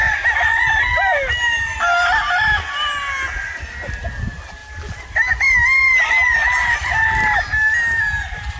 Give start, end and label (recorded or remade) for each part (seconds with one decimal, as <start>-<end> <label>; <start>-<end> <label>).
0.0-8.6 recorded